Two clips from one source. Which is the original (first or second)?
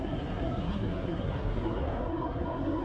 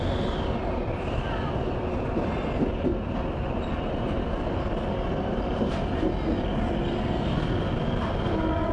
second